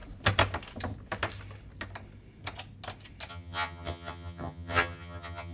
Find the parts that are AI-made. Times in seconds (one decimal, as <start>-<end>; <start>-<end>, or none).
3.3-5.5